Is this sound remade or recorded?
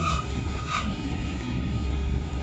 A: remade